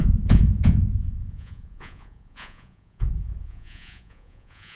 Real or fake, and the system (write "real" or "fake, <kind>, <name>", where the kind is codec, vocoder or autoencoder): fake, vocoder, Vocos